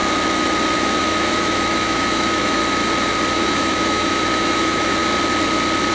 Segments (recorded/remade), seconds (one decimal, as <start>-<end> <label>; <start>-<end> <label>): 0.0-0.7 recorded; 0.7-2.6 remade; 2.6-3.3 recorded; 3.3-5.0 remade; 5.0-5.9 recorded